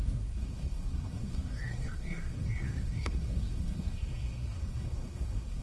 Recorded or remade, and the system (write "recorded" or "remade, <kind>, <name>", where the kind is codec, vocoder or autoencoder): remade, codec, SNAC